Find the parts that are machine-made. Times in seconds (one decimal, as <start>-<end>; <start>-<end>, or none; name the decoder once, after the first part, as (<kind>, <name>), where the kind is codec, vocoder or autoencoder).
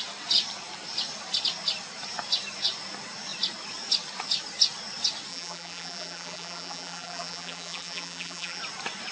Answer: 5.3-8.6 (vocoder, BigVGAN v2)